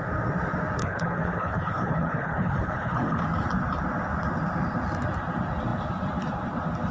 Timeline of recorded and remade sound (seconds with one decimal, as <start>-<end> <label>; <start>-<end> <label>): 0.0-0.8 recorded; 0.8-3.2 remade; 3.2-6.9 recorded